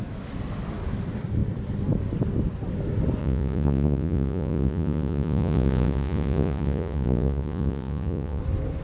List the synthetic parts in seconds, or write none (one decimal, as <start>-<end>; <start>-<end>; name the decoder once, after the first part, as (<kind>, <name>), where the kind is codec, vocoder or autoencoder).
3.2-8.4 (vocoder, Vocos)